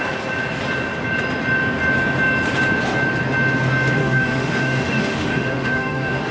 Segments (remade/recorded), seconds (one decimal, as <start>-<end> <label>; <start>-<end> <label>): 0.0-4.0 recorded; 4.0-6.3 remade

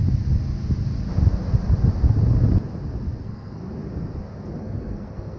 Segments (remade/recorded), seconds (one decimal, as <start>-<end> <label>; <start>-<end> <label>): 0.0-3.2 recorded; 3.2-3.6 remade; 3.6-4.6 recorded; 4.6-5.4 remade

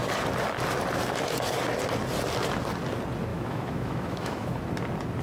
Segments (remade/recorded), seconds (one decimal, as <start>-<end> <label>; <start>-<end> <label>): 0.0-3.3 recorded; 3.3-4.6 remade; 4.6-5.2 recorded

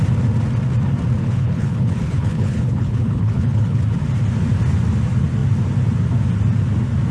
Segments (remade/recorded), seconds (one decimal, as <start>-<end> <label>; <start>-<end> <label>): 0.0-1.2 recorded; 1.2-3.8 remade; 3.8-7.1 recorded

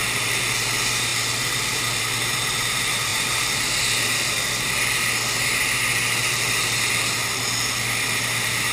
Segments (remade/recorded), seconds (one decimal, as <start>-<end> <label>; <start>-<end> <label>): 0.0-3.1 recorded; 3.1-3.8 remade; 3.8-8.7 recorded

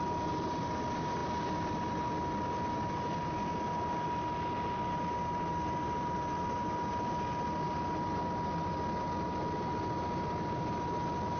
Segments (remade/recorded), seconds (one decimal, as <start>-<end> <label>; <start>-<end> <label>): 0.0-11.4 recorded

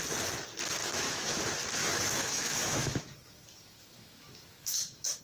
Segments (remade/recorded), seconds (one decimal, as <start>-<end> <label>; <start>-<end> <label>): 0.0-0.8 recorded; 0.8-1.4 remade; 1.4-1.8 recorded; 1.8-5.2 remade